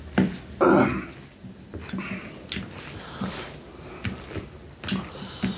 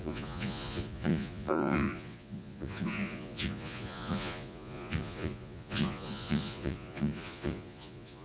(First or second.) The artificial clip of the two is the second